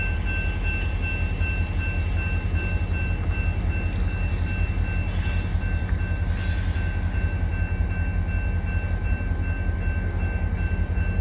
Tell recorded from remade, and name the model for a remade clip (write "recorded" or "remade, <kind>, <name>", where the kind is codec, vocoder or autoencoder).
recorded